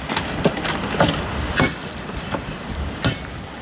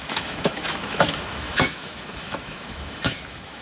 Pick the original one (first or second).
first